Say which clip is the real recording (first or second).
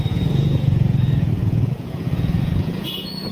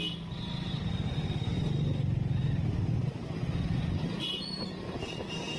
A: second